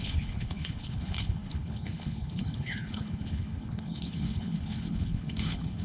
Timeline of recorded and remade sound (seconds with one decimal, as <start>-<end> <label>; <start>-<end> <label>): 0.0-5.8 remade